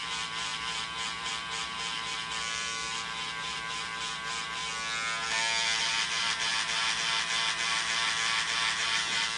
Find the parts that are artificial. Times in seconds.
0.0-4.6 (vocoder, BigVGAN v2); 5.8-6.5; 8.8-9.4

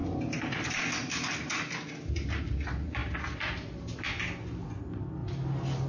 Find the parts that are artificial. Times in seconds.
none

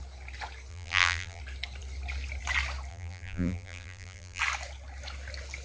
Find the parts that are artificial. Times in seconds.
0.7-1.4 (vocoder, BigVGAN v2); 2.9-4.4